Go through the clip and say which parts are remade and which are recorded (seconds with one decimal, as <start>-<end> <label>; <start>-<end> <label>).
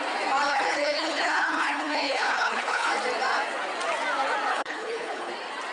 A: 0.0-0.5 recorded; 0.5-2.9 remade; 2.9-4.5 recorded; 4.5-5.3 remade; 5.3-5.7 recorded